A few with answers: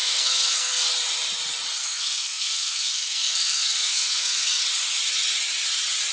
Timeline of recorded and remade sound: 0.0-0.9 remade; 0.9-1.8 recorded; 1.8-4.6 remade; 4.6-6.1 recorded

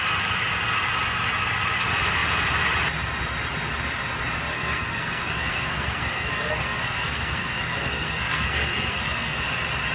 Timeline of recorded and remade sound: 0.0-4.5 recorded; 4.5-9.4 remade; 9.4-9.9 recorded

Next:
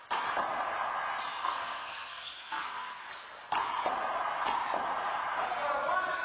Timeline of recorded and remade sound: 0.0-1.4 recorded; 1.4-3.0 remade; 3.0-6.2 recorded

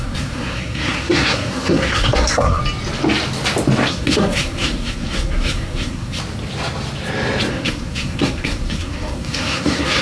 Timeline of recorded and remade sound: 0.0-2.6 remade; 2.6-3.9 recorded; 3.9-6.2 remade; 6.2-7.5 recorded; 7.5-10.0 remade

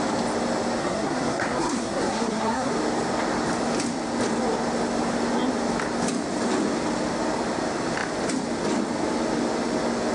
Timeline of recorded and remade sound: 0.0-0.8 recorded; 0.8-2.7 remade; 2.7-10.1 recorded

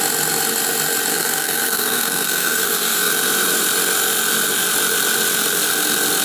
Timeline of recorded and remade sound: 0.0-1.1 recorded; 1.1-3.1 remade; 3.1-6.2 recorded

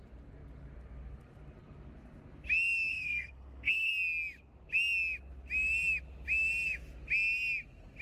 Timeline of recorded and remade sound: 0.0-2.9 recorded; 2.9-3.9 remade; 3.9-8.0 recorded

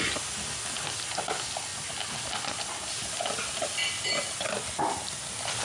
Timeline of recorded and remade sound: 0.0-5.6 recorded